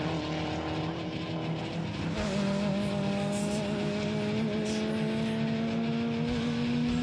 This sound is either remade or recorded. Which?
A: recorded